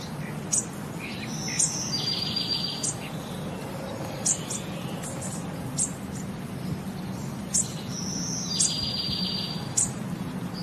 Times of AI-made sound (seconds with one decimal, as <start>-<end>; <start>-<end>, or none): none